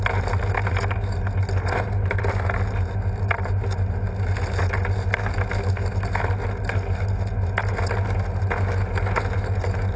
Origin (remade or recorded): recorded